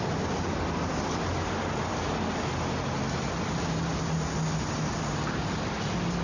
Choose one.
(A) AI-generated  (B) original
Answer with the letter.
B